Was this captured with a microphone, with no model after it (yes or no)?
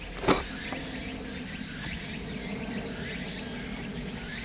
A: yes